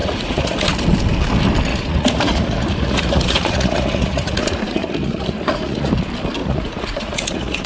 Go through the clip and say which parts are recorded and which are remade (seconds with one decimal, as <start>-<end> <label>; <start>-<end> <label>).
0.0-0.8 remade; 0.8-1.7 recorded; 1.7-5.9 remade; 5.9-6.4 recorded; 6.4-7.7 remade